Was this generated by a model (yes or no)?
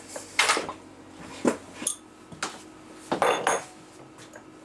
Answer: no